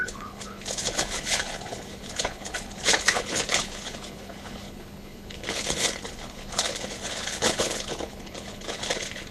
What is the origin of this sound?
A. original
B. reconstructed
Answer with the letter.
B